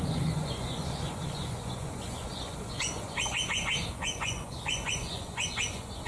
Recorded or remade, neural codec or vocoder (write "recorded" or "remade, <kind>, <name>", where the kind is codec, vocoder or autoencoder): remade, vocoder, Vocos